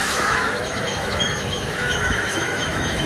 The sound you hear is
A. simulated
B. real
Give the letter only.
A